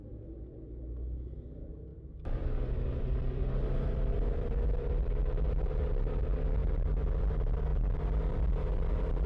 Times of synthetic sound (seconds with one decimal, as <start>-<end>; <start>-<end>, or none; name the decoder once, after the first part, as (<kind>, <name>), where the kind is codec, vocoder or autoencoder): 1.9-5.1 (vocoder, BigVGAN v2)